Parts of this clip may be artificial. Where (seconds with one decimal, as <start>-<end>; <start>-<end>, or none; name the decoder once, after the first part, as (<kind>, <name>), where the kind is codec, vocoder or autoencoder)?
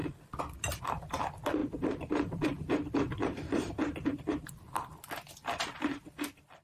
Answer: 1.6-4.5 (vocoder, BigVGAN v2)